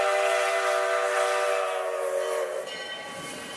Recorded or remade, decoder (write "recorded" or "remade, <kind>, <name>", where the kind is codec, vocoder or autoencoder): recorded